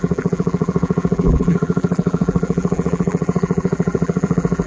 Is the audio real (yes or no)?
no